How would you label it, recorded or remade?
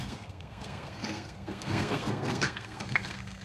remade